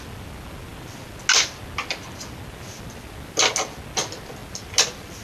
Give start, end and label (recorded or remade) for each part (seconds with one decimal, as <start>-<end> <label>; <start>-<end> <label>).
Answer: 0.0-5.2 recorded